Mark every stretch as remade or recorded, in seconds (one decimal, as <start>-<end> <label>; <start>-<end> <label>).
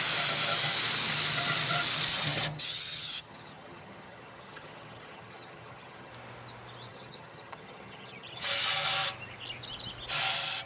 0.0-2.1 recorded; 2.1-6.1 remade; 6.1-6.9 recorded; 6.9-8.5 remade; 8.5-10.7 recorded